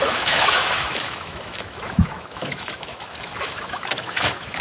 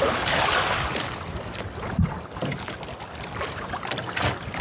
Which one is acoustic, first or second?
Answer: second